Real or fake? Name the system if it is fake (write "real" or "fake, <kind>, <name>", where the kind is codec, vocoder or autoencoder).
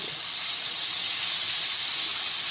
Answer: real